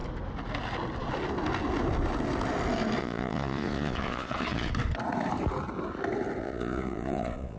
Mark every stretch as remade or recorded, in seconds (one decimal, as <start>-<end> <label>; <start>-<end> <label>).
0.0-3.0 recorded; 3.0-4.7 remade; 4.7-6.4 recorded; 6.4-7.6 remade